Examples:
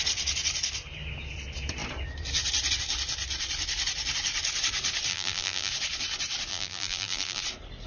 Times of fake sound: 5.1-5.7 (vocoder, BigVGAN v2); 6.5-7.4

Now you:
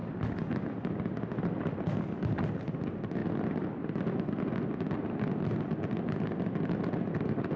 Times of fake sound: none